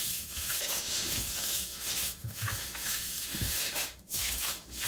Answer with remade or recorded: remade